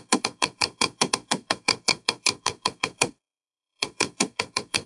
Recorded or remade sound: remade